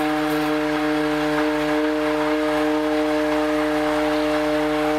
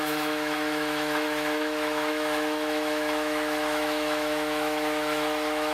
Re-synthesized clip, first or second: second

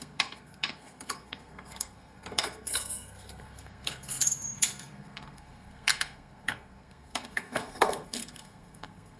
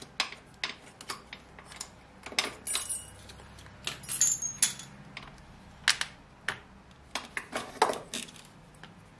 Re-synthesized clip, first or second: first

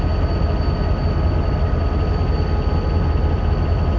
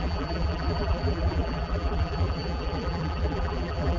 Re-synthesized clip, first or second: second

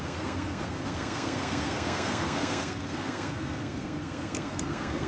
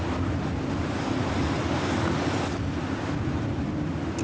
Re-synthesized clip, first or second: first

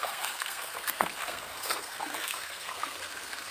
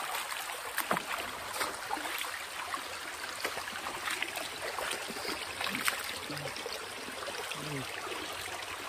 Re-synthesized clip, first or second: first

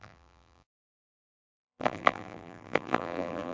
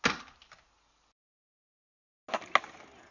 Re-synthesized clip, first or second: first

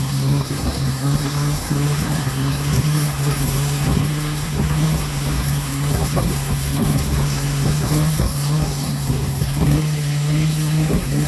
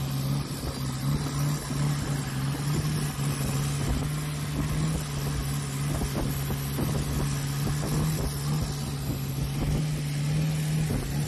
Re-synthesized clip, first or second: first